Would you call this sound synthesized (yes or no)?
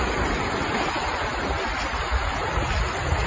no